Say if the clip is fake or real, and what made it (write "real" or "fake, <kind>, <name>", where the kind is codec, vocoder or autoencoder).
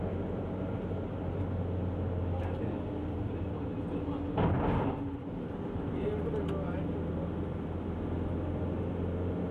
real